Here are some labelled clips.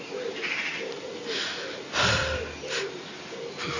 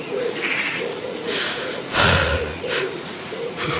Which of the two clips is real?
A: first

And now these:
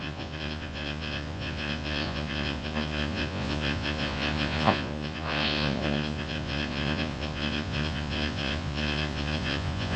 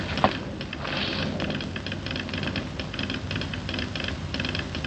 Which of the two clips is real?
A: second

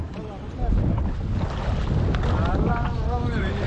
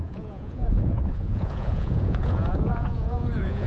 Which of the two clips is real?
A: first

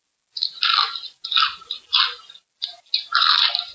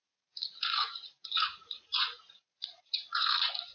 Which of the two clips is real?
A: first